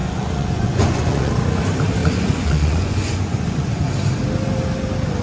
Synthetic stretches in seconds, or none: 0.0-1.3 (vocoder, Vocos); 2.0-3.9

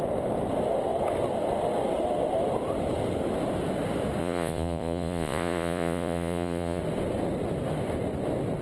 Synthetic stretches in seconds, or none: 4.2-6.8 (vocoder, Vocos)

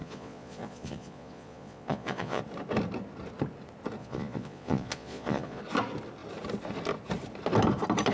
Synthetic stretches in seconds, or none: 0.0-2.4 (vocoder, Vocos); 4.0-5.6